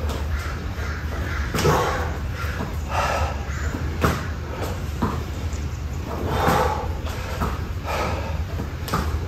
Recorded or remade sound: remade